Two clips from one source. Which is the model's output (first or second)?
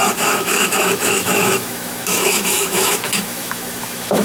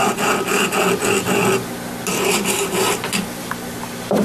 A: first